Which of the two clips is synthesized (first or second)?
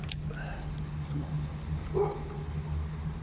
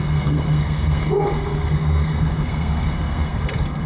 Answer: second